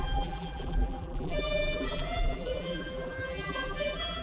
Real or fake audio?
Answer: fake